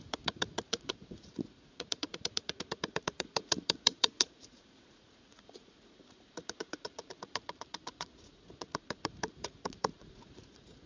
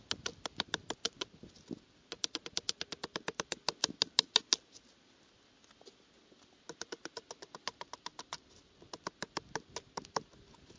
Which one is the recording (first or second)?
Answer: second